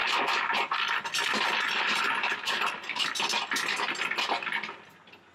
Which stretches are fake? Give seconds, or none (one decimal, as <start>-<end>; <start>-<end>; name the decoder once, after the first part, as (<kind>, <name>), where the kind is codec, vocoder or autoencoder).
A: none